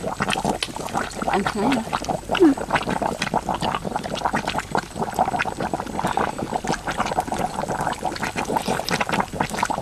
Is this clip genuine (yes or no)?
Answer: yes